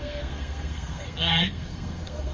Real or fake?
fake